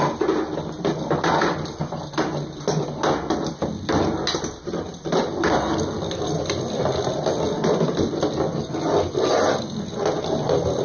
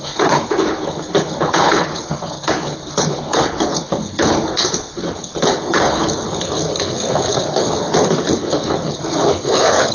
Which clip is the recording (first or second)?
first